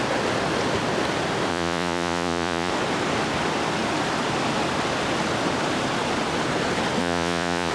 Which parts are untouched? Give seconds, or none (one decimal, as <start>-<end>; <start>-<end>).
0.0-1.5; 2.7-7.0